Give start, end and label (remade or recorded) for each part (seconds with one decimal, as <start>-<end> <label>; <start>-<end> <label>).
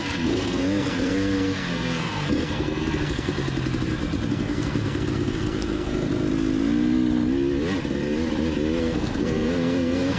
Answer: 0.0-3.3 remade; 3.3-4.3 recorded; 4.3-6.1 remade; 6.1-8.8 recorded; 8.8-10.2 remade